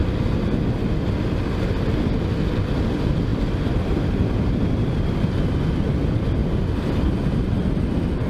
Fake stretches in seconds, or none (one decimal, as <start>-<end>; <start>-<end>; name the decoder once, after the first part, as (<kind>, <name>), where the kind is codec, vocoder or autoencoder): none